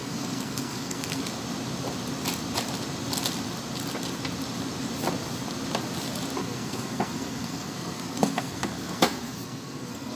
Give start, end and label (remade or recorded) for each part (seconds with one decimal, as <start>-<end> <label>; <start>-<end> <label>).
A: 0.0-1.2 remade; 1.2-6.4 recorded; 6.4-10.1 remade